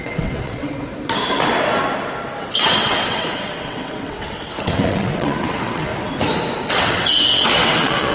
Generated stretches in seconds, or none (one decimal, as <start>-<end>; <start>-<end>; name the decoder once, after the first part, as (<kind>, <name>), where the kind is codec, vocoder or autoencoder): 0.0-0.8 (vocoder, WaveNeXt); 2.4-5.9; 6.7-8.1